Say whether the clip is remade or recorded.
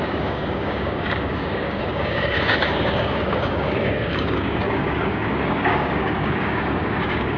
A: remade